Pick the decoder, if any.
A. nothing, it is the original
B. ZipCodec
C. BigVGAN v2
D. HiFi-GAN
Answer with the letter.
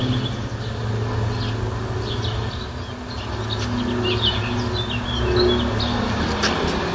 A